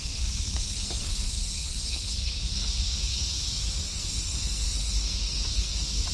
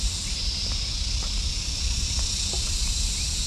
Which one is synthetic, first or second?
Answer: first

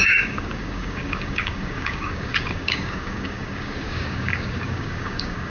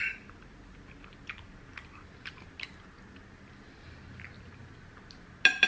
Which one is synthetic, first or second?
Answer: first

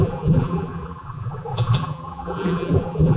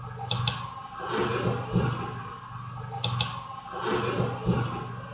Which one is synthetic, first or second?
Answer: first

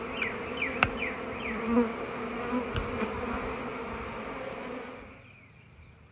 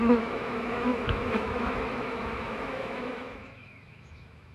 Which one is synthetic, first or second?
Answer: second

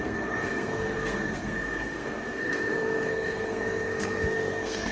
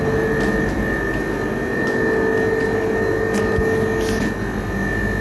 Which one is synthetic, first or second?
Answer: first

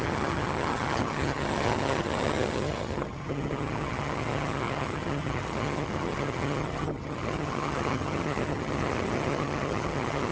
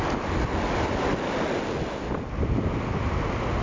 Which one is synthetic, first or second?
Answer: first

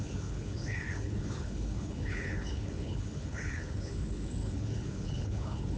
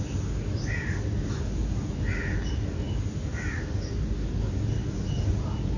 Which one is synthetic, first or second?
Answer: first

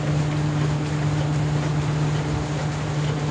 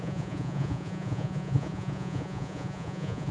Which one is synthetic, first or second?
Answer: second